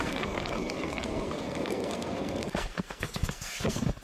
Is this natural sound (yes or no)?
no